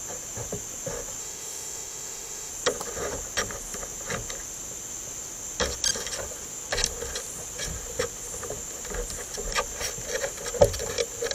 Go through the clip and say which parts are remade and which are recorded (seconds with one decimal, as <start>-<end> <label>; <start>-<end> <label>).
0.0-1.2 recorded; 1.2-2.5 remade; 2.5-11.3 recorded